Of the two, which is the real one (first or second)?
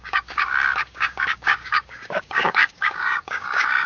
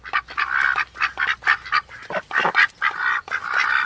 second